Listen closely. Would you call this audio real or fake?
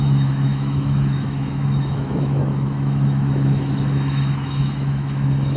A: fake